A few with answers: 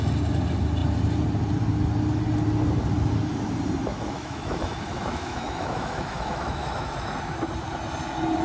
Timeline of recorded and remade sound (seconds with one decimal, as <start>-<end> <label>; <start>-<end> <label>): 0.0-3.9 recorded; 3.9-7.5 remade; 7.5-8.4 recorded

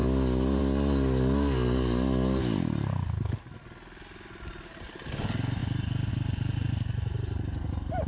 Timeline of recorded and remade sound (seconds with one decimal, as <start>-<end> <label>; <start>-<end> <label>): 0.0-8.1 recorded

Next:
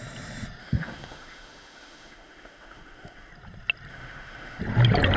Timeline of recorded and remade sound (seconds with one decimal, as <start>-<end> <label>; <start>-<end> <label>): 0.0-0.6 recorded; 0.6-3.3 remade; 3.3-3.9 recorded; 3.9-4.6 remade; 4.6-5.2 recorded

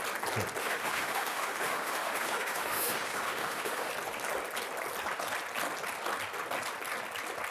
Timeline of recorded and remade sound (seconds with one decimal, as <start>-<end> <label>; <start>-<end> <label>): 0.0-0.6 recorded; 0.6-3.9 remade; 3.9-7.5 recorded